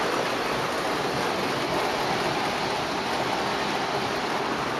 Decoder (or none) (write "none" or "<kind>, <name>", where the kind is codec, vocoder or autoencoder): none